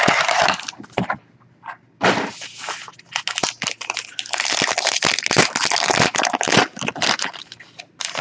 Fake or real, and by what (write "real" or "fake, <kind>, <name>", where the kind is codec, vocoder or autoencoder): real